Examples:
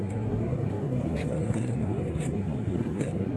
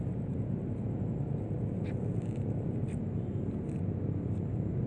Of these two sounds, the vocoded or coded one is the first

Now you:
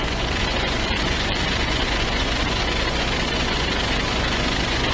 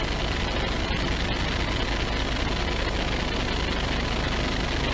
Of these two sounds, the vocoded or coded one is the first